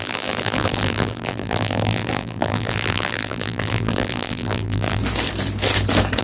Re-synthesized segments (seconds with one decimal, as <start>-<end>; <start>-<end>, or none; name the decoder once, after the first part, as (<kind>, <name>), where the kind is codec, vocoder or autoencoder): 0.0-5.0 (vocoder, BigVGAN v2)